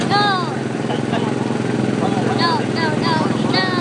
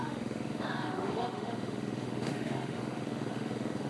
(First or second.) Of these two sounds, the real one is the first